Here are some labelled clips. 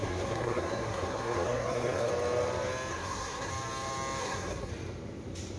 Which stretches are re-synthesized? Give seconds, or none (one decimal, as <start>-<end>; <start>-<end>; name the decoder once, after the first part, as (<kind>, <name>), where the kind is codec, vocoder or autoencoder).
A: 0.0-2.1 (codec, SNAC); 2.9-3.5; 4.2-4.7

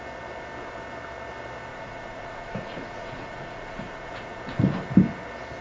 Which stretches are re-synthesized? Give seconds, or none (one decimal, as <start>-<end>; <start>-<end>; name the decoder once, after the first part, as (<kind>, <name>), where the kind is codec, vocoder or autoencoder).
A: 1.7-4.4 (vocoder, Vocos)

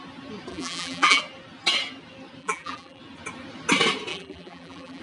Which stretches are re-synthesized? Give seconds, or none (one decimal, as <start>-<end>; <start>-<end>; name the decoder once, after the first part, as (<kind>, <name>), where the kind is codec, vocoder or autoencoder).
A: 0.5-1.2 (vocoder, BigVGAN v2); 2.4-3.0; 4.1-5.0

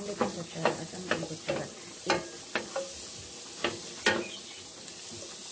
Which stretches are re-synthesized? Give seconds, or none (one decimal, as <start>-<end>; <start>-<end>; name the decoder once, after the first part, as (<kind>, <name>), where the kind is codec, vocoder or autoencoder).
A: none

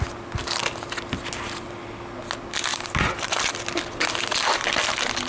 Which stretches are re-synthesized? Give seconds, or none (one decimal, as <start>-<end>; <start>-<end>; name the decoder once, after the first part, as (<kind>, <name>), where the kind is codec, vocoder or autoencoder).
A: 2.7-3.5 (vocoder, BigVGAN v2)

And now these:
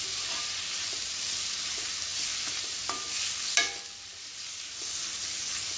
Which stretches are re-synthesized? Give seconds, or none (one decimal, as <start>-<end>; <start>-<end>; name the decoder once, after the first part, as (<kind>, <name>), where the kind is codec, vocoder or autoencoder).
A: none

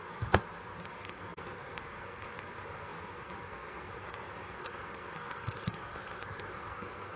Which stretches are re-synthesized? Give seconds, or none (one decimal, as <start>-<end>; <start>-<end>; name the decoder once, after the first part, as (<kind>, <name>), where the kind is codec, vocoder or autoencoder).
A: 0.0-7.2 (codec, SNAC)